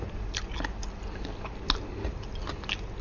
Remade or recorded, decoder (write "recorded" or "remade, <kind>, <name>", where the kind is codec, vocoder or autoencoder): recorded